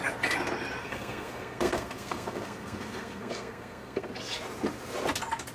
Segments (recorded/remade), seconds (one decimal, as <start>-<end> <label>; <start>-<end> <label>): 0.0-0.8 recorded; 0.8-4.1 remade; 4.1-5.5 recorded